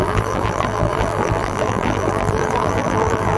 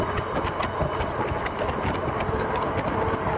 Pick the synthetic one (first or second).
first